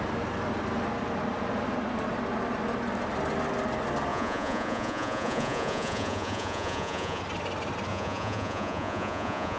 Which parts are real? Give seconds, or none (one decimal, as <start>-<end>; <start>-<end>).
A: 0.0-4.1; 7.2-7.9